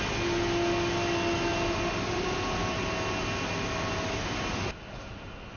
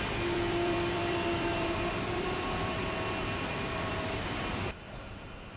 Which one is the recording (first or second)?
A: first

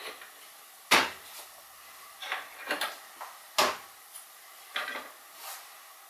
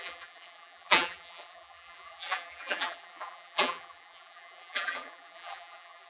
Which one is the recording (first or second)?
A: first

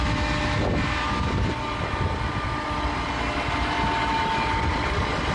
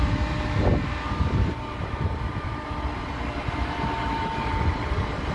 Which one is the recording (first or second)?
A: first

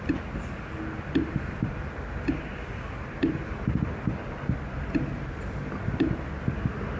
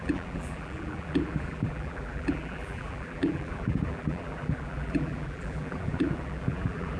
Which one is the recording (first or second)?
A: first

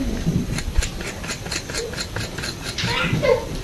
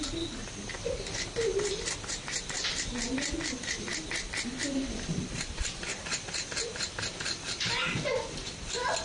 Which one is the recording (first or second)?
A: first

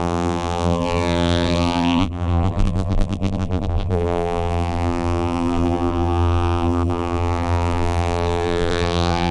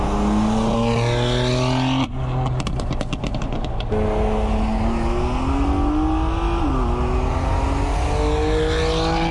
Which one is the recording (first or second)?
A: second